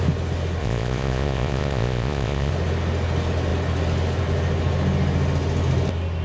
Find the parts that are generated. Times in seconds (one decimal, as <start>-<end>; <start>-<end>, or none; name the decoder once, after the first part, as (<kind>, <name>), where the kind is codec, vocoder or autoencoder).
0.6-2.5 (vocoder, Vocos)